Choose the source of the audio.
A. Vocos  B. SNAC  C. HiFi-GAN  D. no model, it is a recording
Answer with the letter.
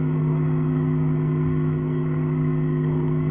B